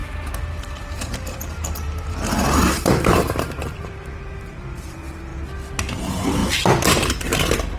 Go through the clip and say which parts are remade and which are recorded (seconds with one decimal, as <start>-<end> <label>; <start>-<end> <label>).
0.0-5.3 remade; 5.3-6.0 recorded; 6.0-6.4 remade; 6.4-7.8 recorded